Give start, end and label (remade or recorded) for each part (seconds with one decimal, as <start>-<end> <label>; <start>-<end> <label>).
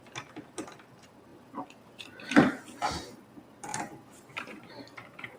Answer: 0.0-5.4 remade